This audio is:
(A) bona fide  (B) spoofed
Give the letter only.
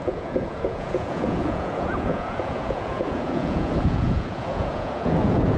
B